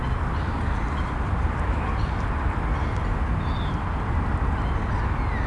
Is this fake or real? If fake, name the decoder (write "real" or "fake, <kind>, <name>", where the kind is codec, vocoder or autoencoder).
real